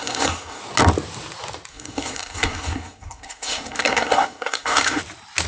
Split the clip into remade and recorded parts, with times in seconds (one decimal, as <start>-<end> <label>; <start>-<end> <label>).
0.0-0.6 remade; 0.6-1.7 recorded; 1.7-5.0 remade; 5.0-5.5 recorded